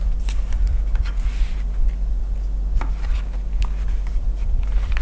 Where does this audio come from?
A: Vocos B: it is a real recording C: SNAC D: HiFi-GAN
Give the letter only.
B